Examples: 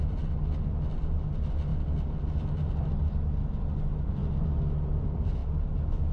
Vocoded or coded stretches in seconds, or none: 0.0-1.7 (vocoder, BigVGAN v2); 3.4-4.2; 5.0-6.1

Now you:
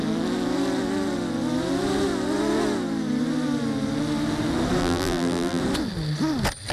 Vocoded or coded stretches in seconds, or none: 4.8-5.6 (vocoder, BigVGAN v2)